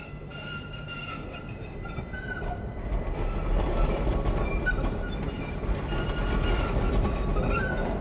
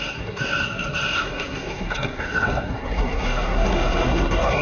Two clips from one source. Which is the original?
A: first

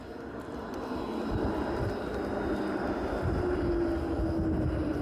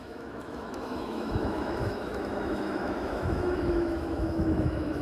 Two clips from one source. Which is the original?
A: first